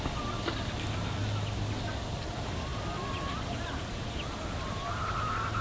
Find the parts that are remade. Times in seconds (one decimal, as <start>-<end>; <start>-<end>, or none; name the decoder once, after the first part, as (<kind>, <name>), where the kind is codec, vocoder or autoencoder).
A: none